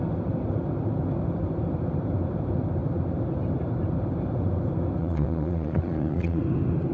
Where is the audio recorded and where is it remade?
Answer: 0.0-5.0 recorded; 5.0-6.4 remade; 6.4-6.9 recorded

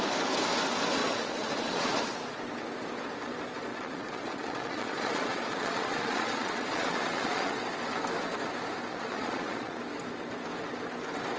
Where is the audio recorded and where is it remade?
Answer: 0.0-1.0 recorded; 1.0-2.0 remade; 2.0-3.7 recorded; 3.7-7.6 remade; 7.6-8.9 recorded; 8.9-9.8 remade; 9.8-11.4 recorded

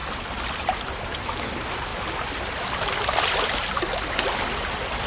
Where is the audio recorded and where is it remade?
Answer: 0.0-0.8 remade; 0.8-5.1 recorded

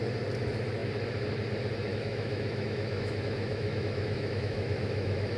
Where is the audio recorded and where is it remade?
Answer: 0.0-1.9 recorded; 1.9-5.4 remade

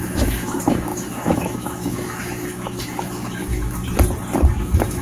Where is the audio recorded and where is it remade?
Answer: 0.0-3.8 remade; 3.8-4.5 recorded; 4.5-5.0 remade

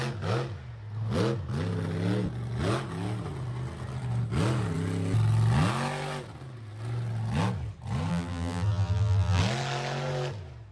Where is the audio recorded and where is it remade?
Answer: 0.0-8.1 recorded; 8.1-9.4 remade; 9.4-10.7 recorded

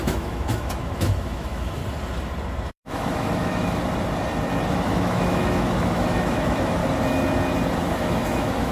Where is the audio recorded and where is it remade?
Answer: 0.0-1.8 remade; 1.8-2.7 recorded; 2.7-3.8 remade; 3.8-4.7 recorded; 4.7-6.8 remade; 6.8-7.8 recorded; 7.8-8.7 remade